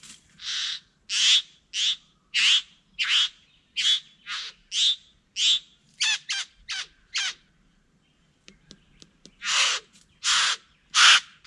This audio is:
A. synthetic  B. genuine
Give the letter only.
B